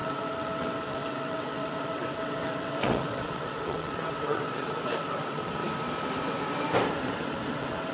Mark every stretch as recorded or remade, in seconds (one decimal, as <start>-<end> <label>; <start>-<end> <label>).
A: 0.0-5.6 remade; 5.6-7.0 recorded; 7.0-7.9 remade